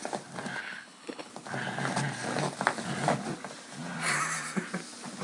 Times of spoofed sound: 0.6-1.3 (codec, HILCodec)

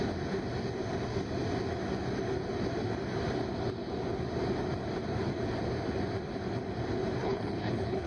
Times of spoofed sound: 7.2-8.1 (codec, HILCodec)

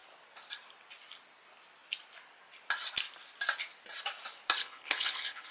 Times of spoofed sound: 4.6-5.5 (codec, HILCodec)

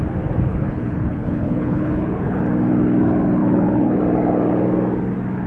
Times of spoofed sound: 0.5-2.4 (codec, HILCodec); 3.4-4.0

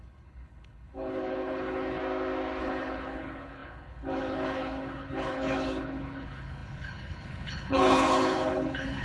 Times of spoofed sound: 0.0-2.0 (codec, HILCodec); 2.6-9.0

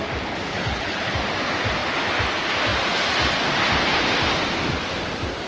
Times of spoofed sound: 0.5-1.1 (codec, HILCodec)

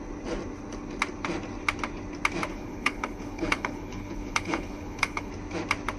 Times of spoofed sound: 2.5-5.3 (codec, HILCodec)